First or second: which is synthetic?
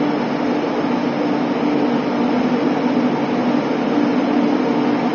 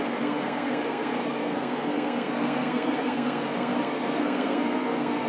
second